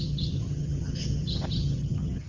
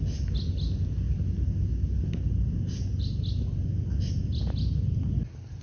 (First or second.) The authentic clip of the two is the second